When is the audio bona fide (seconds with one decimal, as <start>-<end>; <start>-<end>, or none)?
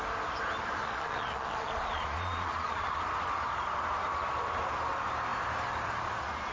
0.0-0.8; 3.0-6.5